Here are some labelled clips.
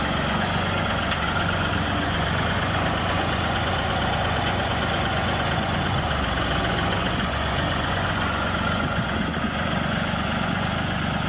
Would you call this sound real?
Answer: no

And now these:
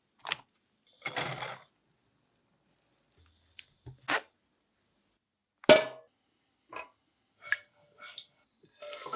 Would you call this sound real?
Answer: yes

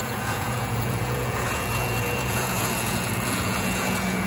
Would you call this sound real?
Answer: no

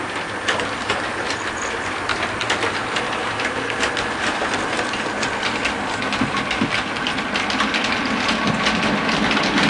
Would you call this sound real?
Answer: yes